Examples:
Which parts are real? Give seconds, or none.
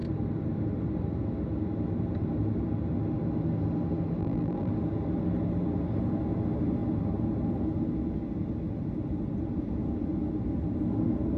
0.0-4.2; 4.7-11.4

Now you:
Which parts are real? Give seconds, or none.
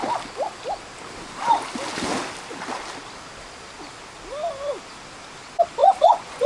0.0-5.8